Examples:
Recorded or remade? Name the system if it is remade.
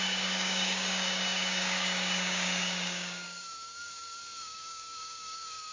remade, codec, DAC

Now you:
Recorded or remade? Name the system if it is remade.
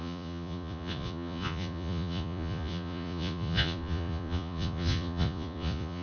remade, vocoder, Vocos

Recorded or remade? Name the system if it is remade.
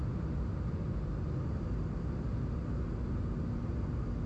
recorded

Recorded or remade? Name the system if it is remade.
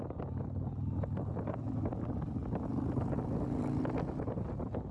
recorded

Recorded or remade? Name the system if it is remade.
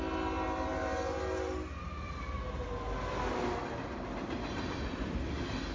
recorded